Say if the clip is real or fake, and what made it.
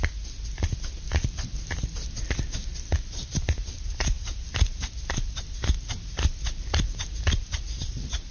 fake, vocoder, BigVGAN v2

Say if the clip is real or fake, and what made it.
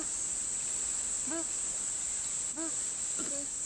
real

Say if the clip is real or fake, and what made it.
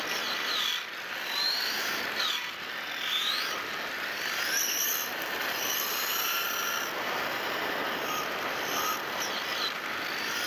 real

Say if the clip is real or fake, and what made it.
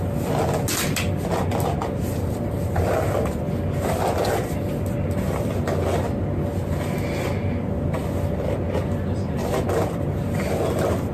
real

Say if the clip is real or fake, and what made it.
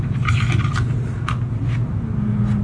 real